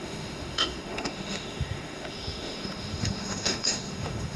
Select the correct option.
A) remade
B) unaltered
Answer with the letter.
A